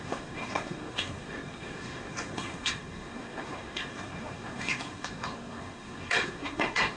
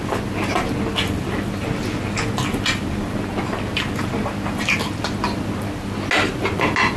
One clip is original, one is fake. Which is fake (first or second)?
first